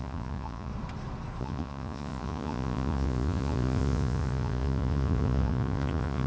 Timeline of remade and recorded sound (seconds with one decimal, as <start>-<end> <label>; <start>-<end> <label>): 0.0-0.7 remade; 0.7-1.4 recorded; 1.4-6.3 remade